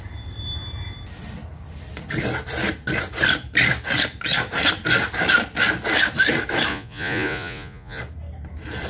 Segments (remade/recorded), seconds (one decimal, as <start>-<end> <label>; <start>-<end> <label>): 0.0-6.7 recorded; 6.7-8.0 remade; 8.0-8.9 recorded

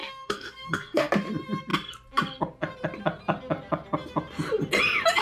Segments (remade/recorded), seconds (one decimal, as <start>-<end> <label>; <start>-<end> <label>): 0.0-1.1 remade; 1.1-5.2 recorded

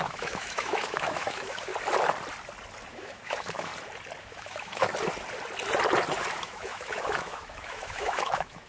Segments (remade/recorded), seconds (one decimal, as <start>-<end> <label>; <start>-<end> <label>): 0.0-1.7 remade; 1.7-2.9 recorded; 2.9-3.7 remade; 3.7-4.2 recorded; 4.2-4.9 remade; 4.9-6.4 recorded; 6.4-8.7 remade

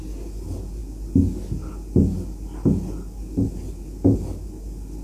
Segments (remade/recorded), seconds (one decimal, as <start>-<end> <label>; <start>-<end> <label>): 0.0-5.0 recorded

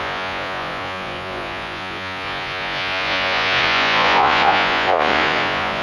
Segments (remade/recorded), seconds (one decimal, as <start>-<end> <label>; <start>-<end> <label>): 0.0-5.8 remade